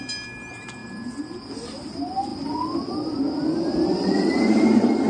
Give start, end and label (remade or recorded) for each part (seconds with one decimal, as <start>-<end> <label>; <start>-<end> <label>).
0.0-5.1 recorded